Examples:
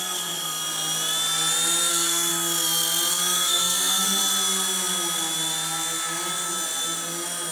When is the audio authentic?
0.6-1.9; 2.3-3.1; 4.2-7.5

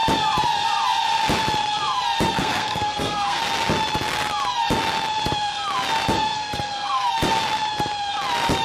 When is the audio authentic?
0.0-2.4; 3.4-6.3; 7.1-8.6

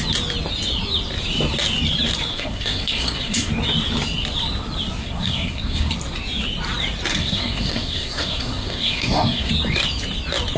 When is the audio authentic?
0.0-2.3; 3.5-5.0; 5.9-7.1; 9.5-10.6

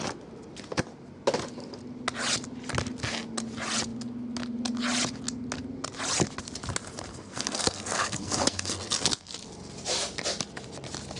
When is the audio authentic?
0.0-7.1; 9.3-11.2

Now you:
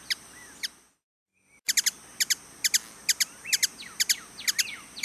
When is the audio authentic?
0.0-5.0

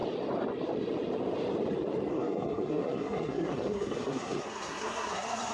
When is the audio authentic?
0.0-2.1